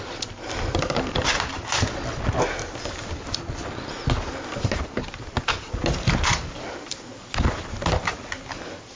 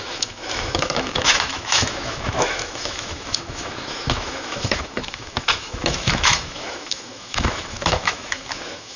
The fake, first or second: second